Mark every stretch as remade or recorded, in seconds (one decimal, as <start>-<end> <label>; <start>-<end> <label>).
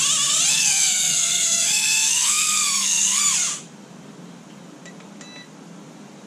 0.0-0.5 recorded; 0.5-3.2 remade; 3.2-6.3 recorded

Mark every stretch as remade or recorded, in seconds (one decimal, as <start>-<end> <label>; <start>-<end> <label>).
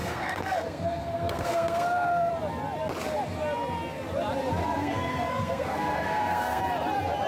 0.0-2.3 remade; 2.3-4.6 recorded; 4.6-6.6 remade; 6.6-7.3 recorded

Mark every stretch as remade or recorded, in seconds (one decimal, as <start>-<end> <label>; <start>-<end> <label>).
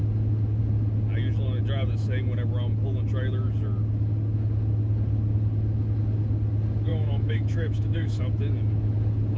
0.0-6.9 recorded; 6.9-8.2 remade; 8.2-9.4 recorded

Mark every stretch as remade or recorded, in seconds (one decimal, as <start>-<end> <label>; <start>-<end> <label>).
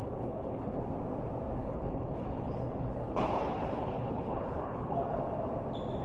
0.0-0.8 remade; 0.8-1.6 recorded; 1.6-5.2 remade; 5.2-6.0 recorded